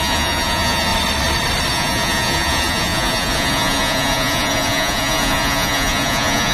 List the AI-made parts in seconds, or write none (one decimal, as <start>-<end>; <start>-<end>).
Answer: 0.0-0.9; 1.7-6.5